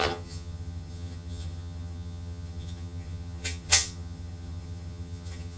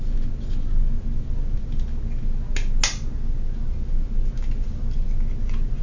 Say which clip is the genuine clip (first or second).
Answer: second